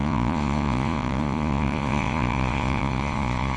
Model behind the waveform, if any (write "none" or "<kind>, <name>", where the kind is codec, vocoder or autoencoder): vocoder, Vocos